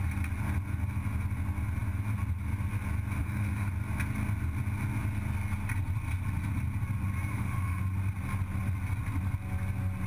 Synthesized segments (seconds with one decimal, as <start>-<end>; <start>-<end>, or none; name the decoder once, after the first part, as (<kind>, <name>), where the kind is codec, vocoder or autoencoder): 3.2-3.7 (autoencoder, DAC-VAE); 7.3-7.8